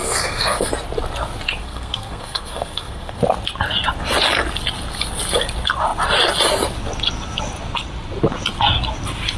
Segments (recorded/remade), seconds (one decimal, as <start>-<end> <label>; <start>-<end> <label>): 0.0-0.7 remade; 0.7-1.6 recorded; 1.6-3.2 remade; 3.2-9.4 recorded

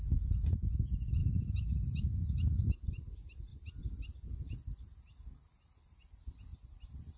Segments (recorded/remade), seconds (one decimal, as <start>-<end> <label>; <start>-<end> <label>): 0.0-1.2 recorded; 1.2-2.8 remade; 2.8-6.5 recorded; 6.5-7.2 remade

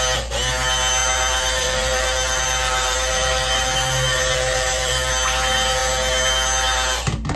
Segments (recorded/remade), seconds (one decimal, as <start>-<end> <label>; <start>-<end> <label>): 0.0-1.0 recorded; 1.0-5.1 remade; 5.1-7.4 recorded

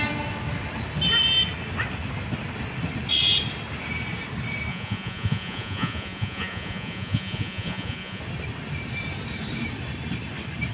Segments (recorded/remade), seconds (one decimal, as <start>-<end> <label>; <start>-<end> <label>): 0.0-4.7 recorded; 4.7-8.2 remade; 8.2-10.7 recorded